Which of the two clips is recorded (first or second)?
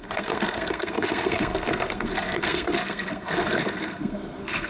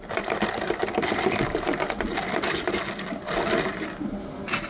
second